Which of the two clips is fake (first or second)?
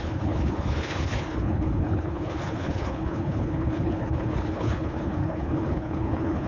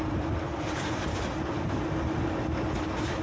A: first